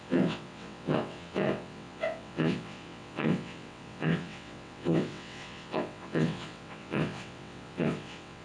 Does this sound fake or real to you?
fake